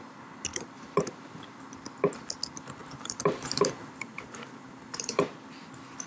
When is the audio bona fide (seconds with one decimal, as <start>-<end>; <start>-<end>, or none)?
0.0-0.5; 1.2-2.8; 5.3-6.1